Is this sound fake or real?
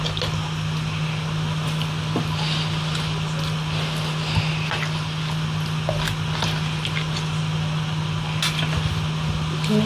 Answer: real